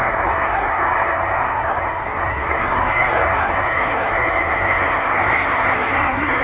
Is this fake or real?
fake